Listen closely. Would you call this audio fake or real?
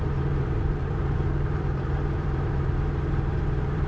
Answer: fake